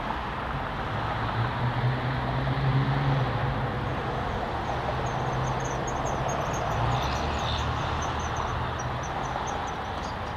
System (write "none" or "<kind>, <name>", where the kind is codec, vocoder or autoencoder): none